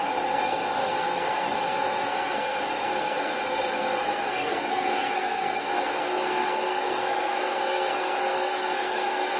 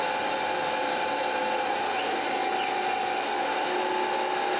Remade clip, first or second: first